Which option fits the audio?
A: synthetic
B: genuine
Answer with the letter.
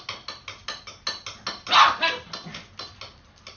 B